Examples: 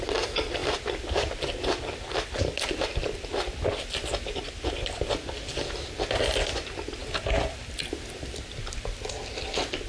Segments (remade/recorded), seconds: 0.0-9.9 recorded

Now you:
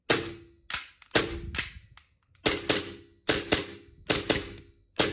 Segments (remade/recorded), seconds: 0.0-5.1 recorded

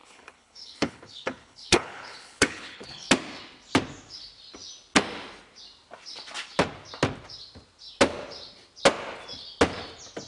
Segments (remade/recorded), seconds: 0.0-3.1 remade; 3.1-10.3 recorded

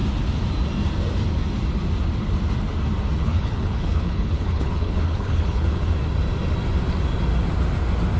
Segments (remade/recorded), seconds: 0.0-3.2 recorded; 3.2-5.9 remade; 5.9-8.2 recorded

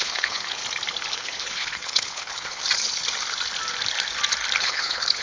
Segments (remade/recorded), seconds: 0.0-0.6 remade; 0.6-1.1 recorded; 1.1-2.6 remade; 2.6-4.6 recorded; 4.6-5.2 remade

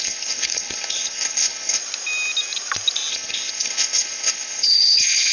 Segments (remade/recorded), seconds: 0.0-1.8 remade; 1.8-3.1 recorded; 3.1-5.3 remade

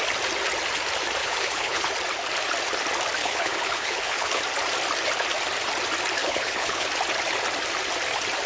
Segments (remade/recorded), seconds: 0.0-1.2 recorded; 1.2-1.9 remade; 1.9-3.2 recorded; 3.2-4.4 remade; 4.4-6.2 recorded; 6.2-6.9 remade; 6.9-8.5 recorded

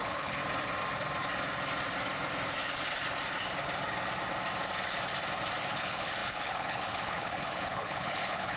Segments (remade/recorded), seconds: 0.0-0.4 remade; 0.4-5.6 recorded; 5.6-8.6 remade